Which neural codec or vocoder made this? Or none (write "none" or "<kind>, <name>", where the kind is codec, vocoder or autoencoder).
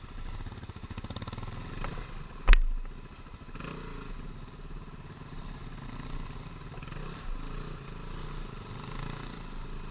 none